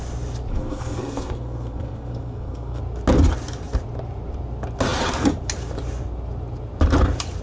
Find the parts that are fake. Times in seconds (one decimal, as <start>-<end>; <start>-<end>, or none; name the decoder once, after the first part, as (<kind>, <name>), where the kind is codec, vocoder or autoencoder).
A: 0.5-2.8 (codec, SNAC)